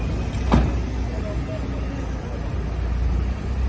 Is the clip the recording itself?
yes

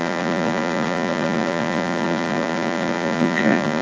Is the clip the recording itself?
no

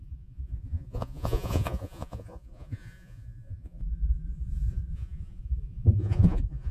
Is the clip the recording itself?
no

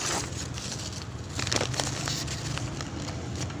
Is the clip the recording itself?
yes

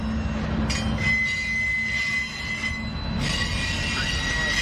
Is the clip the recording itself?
yes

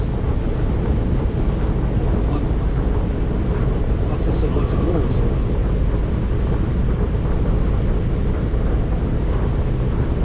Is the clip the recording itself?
yes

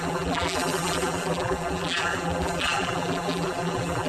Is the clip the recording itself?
no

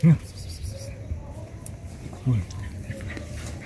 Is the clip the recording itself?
no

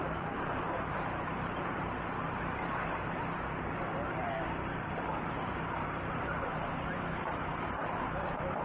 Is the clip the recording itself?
no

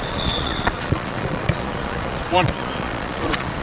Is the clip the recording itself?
no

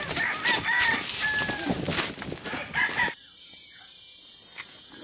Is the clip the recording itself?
yes